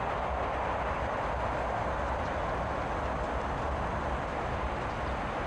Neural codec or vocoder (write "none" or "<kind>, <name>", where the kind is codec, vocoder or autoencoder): none